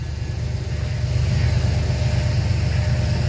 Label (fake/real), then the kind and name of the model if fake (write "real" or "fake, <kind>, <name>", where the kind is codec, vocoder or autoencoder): real